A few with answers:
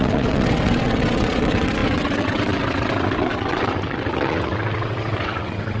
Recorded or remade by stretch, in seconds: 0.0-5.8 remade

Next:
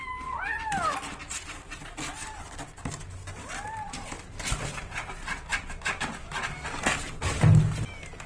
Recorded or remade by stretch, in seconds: 0.0-8.3 recorded

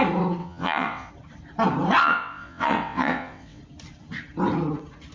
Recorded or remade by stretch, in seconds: 0.0-0.4 recorded; 0.4-1.1 remade; 1.1-2.0 recorded; 2.0-3.6 remade; 3.6-5.1 recorded

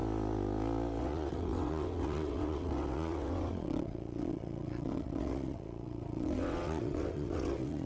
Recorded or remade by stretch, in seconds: 0.0-1.0 recorded; 1.0-7.9 remade

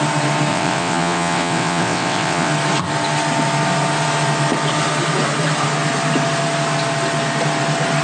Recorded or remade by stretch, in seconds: 0.0-0.5 recorded; 0.5-2.5 remade; 2.5-8.0 recorded